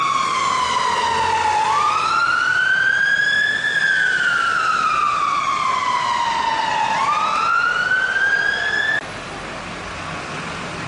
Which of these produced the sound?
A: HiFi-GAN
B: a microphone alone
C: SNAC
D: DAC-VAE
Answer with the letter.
B